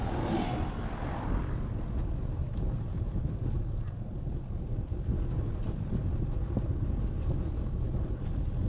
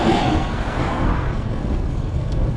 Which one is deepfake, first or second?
second